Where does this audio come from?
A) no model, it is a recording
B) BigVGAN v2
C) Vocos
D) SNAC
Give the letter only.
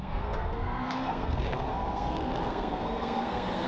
D